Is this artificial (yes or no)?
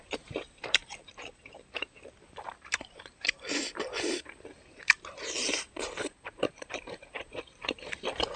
yes